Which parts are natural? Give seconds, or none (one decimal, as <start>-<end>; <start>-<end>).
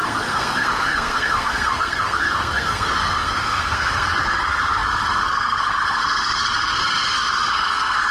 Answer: none